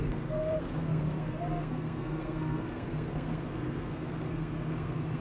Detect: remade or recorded remade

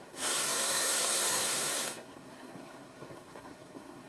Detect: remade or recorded remade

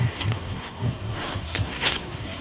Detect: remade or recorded remade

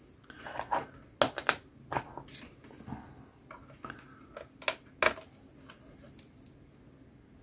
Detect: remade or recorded recorded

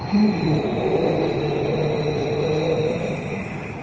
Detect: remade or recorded recorded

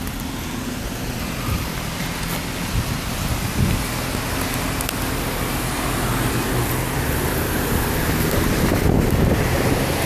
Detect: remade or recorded recorded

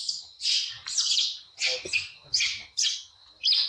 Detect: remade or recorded recorded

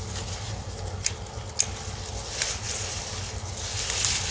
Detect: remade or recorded recorded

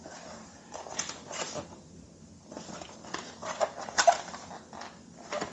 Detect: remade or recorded recorded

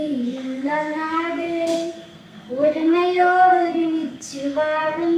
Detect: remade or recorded remade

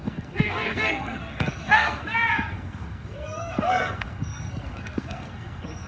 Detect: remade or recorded remade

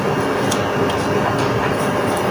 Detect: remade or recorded recorded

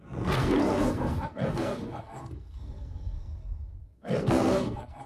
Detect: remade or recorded remade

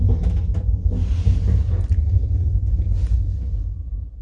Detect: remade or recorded recorded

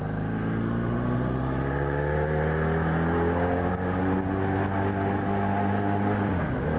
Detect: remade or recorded recorded